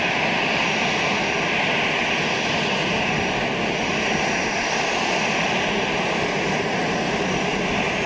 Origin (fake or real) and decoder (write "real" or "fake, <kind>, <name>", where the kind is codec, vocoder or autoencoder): real